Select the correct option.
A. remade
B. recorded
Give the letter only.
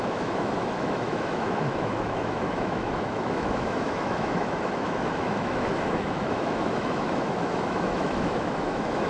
A